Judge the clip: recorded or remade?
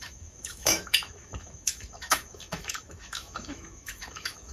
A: remade